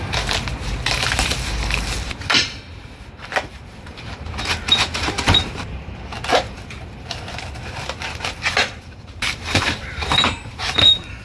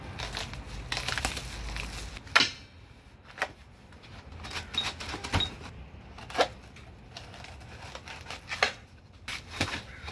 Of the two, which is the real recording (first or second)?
second